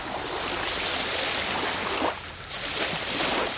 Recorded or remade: recorded